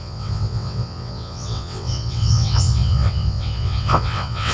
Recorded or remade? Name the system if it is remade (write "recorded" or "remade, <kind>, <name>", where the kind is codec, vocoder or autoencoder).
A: remade, vocoder, WaveNeXt